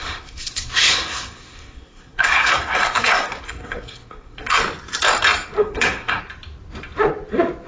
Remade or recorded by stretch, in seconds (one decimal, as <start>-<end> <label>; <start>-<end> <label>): 0.0-4.6 remade; 4.6-5.6 recorded; 5.6-6.2 remade; 6.2-7.7 recorded